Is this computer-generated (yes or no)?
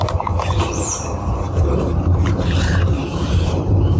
yes